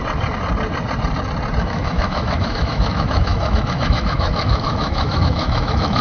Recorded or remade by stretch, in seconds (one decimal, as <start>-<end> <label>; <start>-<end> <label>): 0.0-1.6 recorded; 1.6-6.0 remade